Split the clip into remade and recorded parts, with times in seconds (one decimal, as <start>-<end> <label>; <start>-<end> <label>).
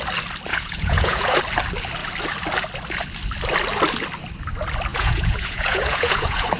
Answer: 0.0-0.5 recorded; 0.5-1.4 remade; 1.4-4.9 recorded; 4.9-6.6 remade